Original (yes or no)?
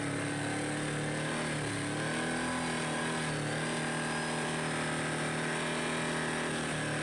yes